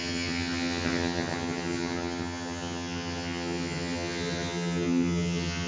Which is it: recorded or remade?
remade